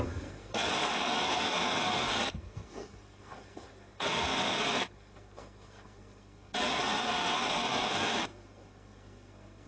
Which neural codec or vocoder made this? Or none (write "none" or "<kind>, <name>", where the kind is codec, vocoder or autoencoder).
codec, SNAC